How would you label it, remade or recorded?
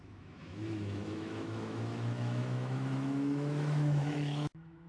remade